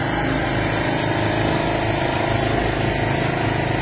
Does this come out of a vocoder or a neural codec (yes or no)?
no